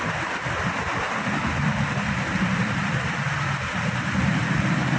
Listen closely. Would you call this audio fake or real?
fake